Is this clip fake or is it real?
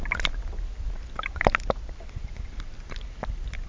real